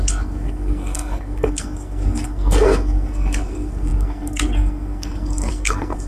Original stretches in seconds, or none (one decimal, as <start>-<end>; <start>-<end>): none